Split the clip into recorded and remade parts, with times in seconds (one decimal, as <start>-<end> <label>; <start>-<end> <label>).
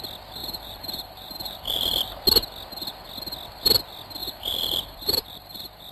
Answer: 0.0-0.4 recorded; 0.4-2.2 remade; 2.2-4.2 recorded; 4.2-5.9 remade